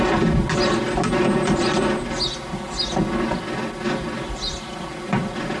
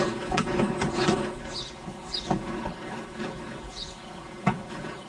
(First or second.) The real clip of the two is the first